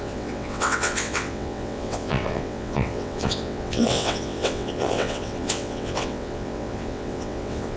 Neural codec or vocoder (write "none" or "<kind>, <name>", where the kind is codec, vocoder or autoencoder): vocoder, WaveNeXt